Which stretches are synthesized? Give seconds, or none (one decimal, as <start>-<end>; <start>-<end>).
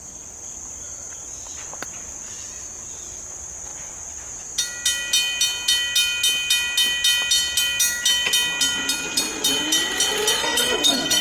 10.4-11.2